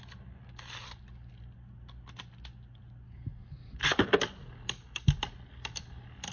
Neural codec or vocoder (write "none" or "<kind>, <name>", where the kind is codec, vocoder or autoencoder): none